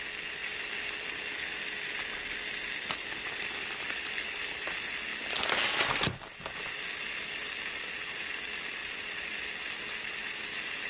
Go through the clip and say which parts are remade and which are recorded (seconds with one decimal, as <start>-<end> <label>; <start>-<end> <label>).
0.0-8.8 recorded; 8.8-9.5 remade; 9.5-10.9 recorded